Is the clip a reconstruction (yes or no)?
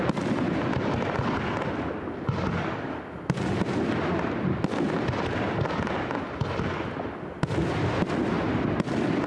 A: no